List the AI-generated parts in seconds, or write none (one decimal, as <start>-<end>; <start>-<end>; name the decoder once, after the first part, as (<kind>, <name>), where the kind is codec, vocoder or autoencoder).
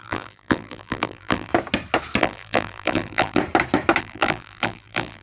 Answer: 0.0-1.5 (vocoder, BigVGAN v2); 2.2-3.4; 4.0-5.2